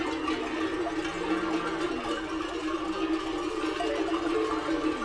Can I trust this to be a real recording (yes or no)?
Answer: yes